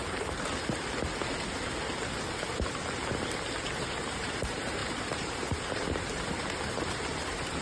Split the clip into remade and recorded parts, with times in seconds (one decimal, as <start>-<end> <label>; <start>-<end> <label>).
0.0-3.6 recorded; 3.6-7.6 remade